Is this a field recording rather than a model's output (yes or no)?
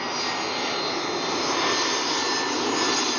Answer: yes